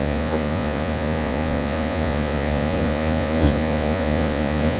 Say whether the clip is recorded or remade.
remade